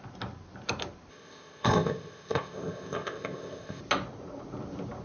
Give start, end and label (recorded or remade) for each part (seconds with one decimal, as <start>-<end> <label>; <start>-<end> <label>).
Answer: 0.0-1.1 recorded; 1.1-3.8 remade; 3.8-5.0 recorded